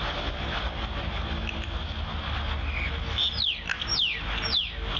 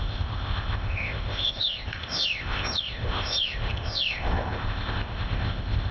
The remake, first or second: second